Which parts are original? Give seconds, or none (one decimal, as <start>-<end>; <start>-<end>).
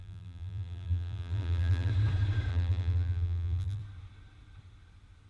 1.9-2.5; 3.8-5.3